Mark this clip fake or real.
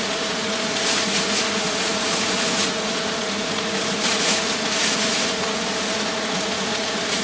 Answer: fake